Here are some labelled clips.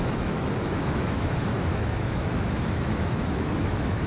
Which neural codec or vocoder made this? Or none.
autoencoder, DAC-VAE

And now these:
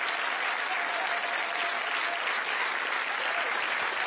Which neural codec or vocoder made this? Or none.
none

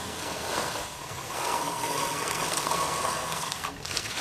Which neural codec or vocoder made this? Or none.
codec, SNAC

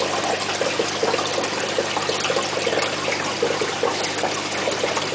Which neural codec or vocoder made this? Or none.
none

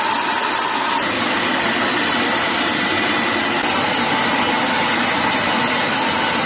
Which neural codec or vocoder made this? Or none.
none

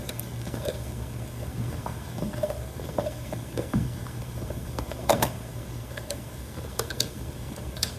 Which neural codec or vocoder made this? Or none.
codec, SNAC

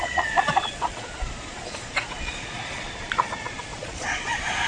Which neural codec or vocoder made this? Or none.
vocoder, Vocos